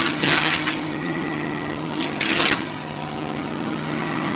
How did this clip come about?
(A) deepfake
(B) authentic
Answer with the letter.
A